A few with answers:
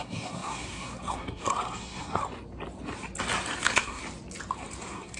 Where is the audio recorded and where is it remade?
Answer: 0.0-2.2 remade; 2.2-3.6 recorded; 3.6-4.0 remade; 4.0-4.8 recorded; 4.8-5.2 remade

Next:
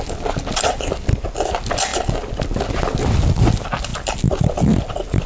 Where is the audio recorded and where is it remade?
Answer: 0.0-5.3 recorded

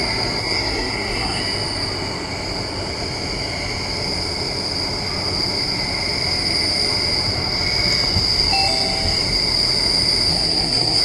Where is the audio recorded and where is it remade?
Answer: 0.0-0.4 recorded; 0.4-1.4 remade; 1.4-10.3 recorded; 10.3-11.0 remade